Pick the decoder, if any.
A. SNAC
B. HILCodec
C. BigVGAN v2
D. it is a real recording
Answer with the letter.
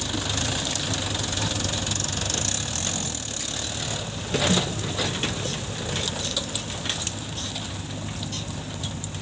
D